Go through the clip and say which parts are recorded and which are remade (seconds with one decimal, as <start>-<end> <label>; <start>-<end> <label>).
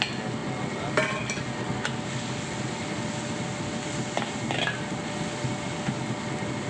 0.0-6.7 recorded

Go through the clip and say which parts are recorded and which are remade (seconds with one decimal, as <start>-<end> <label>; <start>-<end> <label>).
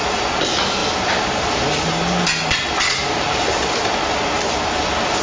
0.0-0.8 recorded; 0.8-1.9 remade; 1.9-3.0 recorded; 3.0-3.6 remade; 3.6-5.2 recorded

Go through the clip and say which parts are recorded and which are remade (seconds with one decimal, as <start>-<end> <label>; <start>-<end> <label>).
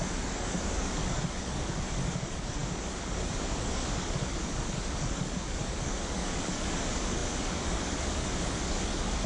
0.0-9.3 remade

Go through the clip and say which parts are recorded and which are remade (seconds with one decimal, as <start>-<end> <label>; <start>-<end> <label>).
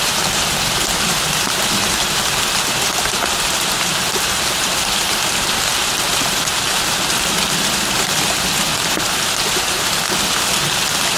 0.0-11.2 recorded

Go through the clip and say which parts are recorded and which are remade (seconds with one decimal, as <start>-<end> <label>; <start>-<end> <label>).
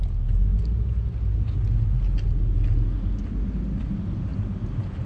0.0-5.1 recorded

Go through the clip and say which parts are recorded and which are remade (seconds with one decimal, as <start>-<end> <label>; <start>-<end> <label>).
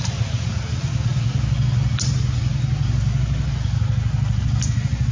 0.0-5.1 recorded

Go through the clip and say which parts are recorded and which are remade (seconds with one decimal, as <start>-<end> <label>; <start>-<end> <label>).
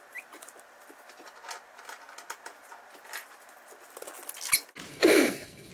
0.0-4.9 recorded; 4.9-5.7 remade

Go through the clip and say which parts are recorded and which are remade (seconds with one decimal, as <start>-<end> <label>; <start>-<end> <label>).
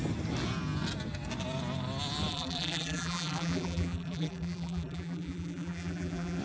0.0-2.3 recorded; 2.3-6.4 remade